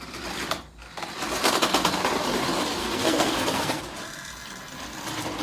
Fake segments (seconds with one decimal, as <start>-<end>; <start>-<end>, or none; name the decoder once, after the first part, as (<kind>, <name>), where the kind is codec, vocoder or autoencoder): 2.8-3.8 (codec, SNAC)